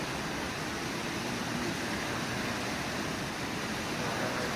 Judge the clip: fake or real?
real